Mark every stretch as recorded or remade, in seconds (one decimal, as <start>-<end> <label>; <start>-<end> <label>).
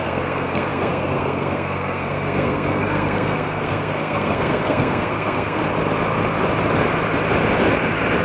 0.0-5.6 remade; 5.6-8.2 recorded